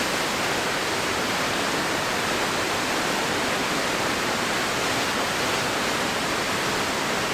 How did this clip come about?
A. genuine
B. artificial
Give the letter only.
A